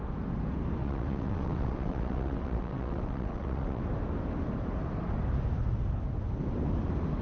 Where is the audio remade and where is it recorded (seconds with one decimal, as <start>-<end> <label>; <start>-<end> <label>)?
0.0-0.8 recorded; 0.8-3.8 remade; 3.8-7.2 recorded